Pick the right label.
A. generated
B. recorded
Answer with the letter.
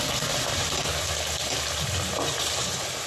B